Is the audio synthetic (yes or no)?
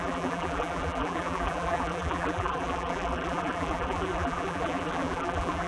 yes